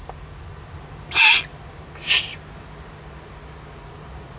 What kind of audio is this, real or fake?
real